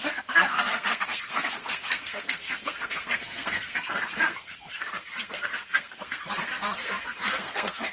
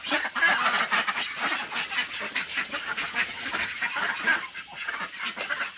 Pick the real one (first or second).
second